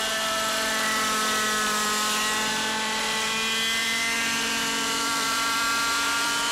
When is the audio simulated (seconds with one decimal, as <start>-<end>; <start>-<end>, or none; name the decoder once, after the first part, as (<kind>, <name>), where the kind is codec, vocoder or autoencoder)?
3.8-6.5 (vocoder, BigVGAN v2)